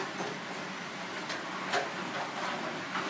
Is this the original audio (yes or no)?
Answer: yes